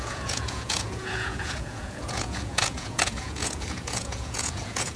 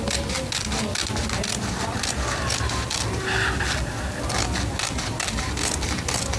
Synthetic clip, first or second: first